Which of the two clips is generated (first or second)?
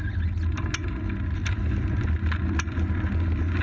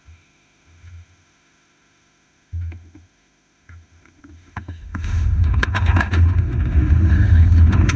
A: second